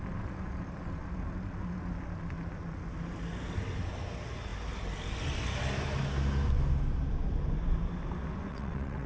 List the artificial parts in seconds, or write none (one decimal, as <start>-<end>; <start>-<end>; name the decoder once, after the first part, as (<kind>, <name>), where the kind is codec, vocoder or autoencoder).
8.5-9.1 (vocoder, WaveNeXt)